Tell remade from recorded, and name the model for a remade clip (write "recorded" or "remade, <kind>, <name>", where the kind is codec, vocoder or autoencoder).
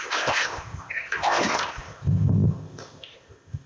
remade, codec, ZipCodec